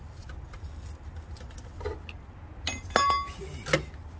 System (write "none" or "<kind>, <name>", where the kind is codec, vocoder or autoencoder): none